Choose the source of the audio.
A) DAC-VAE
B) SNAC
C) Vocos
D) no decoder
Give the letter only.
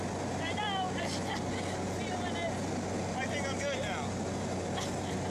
D